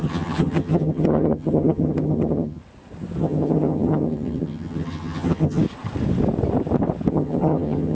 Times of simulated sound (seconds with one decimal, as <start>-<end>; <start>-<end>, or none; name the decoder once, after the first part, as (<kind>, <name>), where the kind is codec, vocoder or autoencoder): 0.0-2.6 (vocoder, HiFi-GAN); 3.2-5.6; 7.1-7.9